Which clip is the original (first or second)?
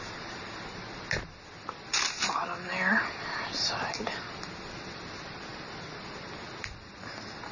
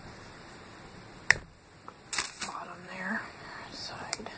first